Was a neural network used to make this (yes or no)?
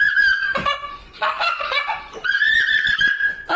yes